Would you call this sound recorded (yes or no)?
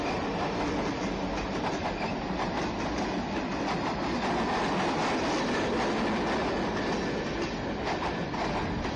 yes